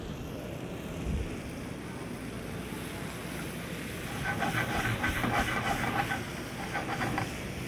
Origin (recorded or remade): recorded